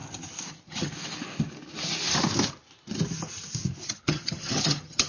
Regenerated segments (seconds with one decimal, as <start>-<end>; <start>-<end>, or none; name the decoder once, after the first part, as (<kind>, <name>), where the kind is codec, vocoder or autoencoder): 0.5-0.9 (vocoder, HiFi-GAN); 4.0-5.1